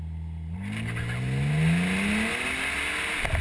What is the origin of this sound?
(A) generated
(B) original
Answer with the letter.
B